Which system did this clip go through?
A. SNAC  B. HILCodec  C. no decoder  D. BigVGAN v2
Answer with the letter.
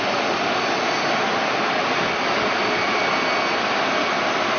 C